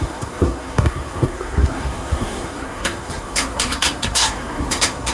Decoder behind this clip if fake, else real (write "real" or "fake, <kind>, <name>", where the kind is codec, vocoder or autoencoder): fake, codec, SNAC